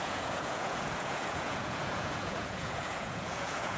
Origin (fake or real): fake